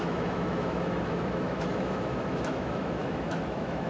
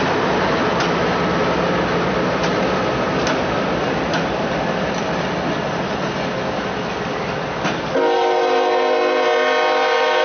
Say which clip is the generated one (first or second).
first